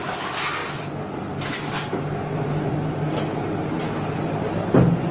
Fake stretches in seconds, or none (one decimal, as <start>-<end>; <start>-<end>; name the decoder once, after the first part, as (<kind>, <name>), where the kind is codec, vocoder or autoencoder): none